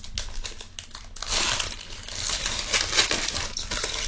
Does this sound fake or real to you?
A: real